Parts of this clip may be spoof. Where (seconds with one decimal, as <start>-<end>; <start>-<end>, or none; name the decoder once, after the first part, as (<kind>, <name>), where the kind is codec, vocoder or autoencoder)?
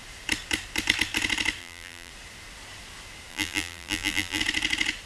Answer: 1.6-2.1 (vocoder, BigVGAN v2); 3.3-4.4